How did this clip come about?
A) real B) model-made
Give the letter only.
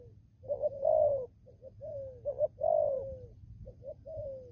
A